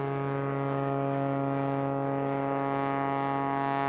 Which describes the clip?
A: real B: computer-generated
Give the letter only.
A